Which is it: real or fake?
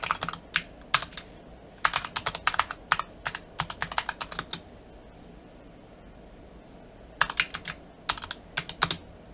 real